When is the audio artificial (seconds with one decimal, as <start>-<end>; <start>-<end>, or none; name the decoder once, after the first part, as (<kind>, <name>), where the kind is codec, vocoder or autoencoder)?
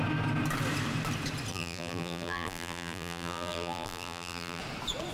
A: 1.5-4.6 (vocoder, BigVGAN v2)